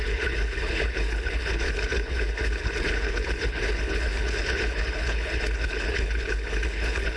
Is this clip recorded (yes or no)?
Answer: no